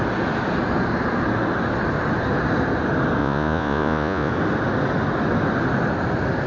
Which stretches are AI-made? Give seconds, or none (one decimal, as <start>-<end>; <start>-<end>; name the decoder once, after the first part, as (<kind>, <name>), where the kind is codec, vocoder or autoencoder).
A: 3.2-4.3 (vocoder, Vocos)